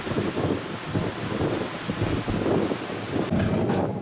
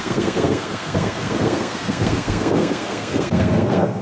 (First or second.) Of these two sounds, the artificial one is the second